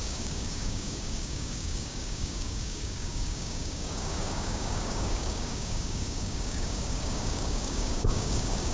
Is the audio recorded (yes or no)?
no